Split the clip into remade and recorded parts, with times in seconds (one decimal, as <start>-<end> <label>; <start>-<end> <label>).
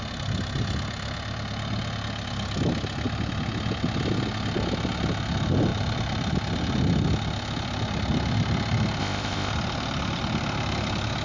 0.0-9.0 recorded; 9.0-9.5 remade; 9.5-11.2 recorded